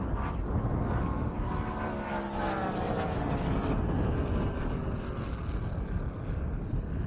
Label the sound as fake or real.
real